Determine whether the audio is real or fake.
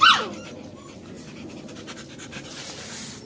real